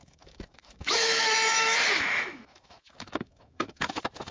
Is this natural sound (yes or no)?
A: no